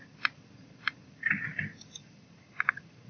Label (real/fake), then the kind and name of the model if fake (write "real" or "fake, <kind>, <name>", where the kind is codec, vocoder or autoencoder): real